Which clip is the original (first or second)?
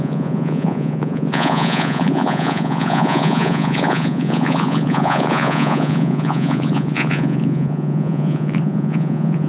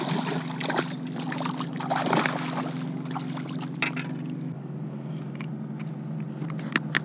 second